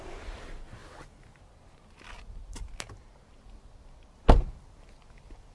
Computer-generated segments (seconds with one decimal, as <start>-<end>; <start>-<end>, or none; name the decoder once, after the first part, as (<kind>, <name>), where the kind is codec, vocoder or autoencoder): none